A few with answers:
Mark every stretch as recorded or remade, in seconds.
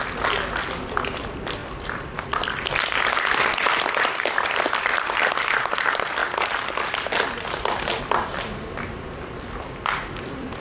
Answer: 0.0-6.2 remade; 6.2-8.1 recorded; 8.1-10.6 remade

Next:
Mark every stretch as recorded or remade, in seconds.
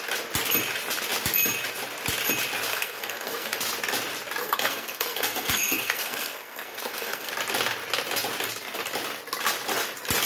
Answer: 0.0-2.7 recorded; 2.7-3.6 remade; 3.6-4.4 recorded; 4.4-7.3 remade; 7.3-10.3 recorded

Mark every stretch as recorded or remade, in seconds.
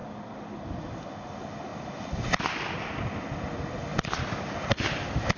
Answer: 0.0-5.4 recorded